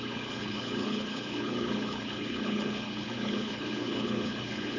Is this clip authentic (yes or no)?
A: no